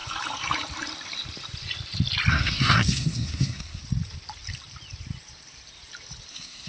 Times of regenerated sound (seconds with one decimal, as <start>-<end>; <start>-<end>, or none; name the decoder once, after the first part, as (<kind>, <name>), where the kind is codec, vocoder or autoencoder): 2.3-3.8 (codec, SNAC); 6.3-6.7